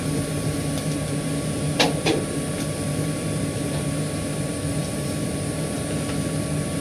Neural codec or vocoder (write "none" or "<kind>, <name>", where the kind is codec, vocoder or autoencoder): vocoder, BigVGAN v2